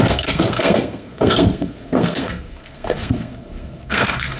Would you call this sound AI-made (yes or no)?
yes